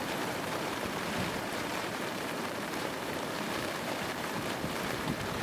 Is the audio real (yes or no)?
no